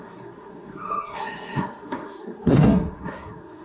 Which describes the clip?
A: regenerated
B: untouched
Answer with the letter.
A